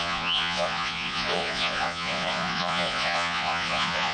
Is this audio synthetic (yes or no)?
yes